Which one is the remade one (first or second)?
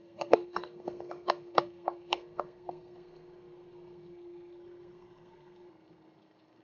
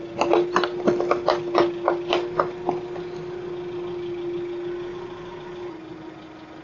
first